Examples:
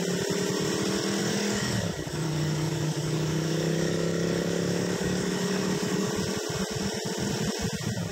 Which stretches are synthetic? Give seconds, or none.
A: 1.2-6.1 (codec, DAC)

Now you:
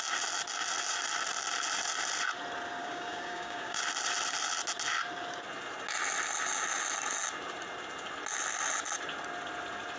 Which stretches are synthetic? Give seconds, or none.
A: 2.8-3.8 (codec, DAC)

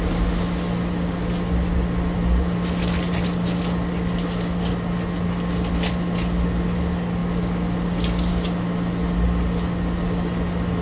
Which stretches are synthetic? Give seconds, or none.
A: none

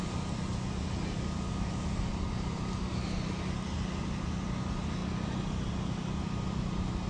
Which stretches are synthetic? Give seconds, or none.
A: none

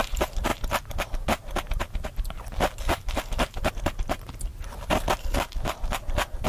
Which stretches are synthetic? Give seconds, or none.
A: none

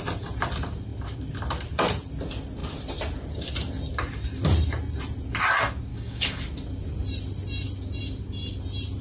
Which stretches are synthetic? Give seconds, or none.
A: 5.9-6.4 (codec, DAC)

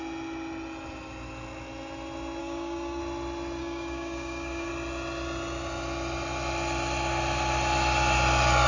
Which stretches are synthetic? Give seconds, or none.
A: 2.4-3.0 (codec, DAC); 3.6-4.7

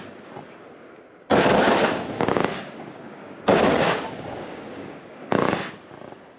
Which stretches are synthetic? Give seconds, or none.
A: 1.6-5.4 (codec, DAC)